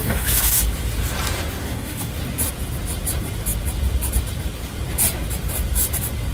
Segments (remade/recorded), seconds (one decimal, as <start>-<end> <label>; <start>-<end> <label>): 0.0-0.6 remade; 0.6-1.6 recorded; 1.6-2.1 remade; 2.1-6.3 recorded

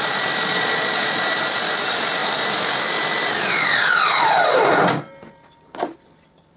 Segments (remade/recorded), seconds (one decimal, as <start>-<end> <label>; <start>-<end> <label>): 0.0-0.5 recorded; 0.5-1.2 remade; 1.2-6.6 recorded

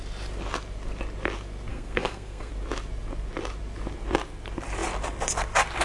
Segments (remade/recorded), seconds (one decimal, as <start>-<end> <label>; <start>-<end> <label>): 0.0-1.7 recorded; 1.7-2.5 remade; 2.5-5.8 recorded